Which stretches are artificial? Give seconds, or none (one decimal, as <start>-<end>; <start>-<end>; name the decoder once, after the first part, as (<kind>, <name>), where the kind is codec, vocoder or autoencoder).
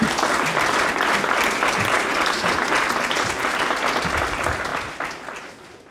none